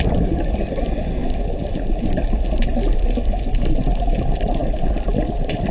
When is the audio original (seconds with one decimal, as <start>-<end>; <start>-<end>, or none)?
0.0-5.7